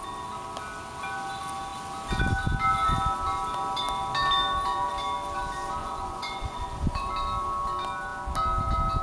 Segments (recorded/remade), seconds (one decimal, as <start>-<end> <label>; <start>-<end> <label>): 0.0-5.8 recorded; 5.8-7.1 remade; 7.1-9.0 recorded